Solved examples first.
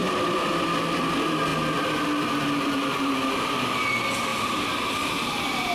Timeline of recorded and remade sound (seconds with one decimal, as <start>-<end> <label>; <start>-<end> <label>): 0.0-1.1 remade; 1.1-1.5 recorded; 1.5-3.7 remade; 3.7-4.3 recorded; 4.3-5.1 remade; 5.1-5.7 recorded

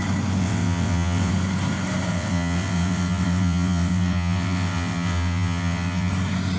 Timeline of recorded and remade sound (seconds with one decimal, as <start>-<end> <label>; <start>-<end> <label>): 0.0-0.4 recorded; 0.4-1.3 remade; 1.3-2.1 recorded; 2.1-6.1 remade; 6.1-6.6 recorded

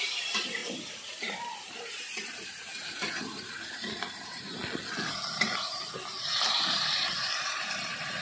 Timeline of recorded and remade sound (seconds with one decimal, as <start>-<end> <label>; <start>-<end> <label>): 0.0-4.6 remade; 4.6-5.3 recorded; 5.3-8.2 remade

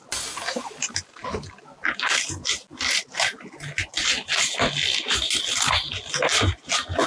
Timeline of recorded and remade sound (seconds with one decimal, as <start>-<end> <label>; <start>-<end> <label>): 0.0-7.1 recorded

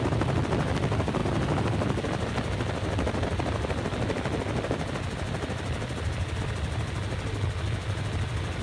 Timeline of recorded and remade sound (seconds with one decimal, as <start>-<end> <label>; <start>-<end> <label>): 0.0-8.6 recorded

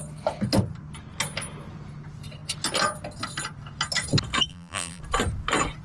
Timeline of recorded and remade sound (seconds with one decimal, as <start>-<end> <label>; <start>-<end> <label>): 0.0-4.5 recorded; 4.5-5.0 remade; 5.0-5.8 recorded